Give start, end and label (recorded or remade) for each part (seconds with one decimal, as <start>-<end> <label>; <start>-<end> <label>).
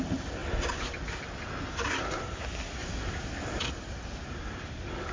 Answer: 0.0-5.1 recorded